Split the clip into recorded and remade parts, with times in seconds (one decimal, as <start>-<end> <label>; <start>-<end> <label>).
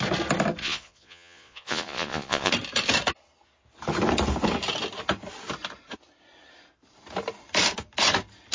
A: 0.0-0.6 recorded; 0.6-2.5 remade; 2.5-8.5 recorded